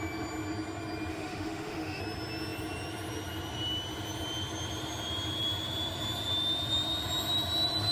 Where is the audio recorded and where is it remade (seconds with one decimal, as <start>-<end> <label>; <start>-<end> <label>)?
0.0-1.1 recorded; 1.1-2.0 remade; 2.0-7.9 recorded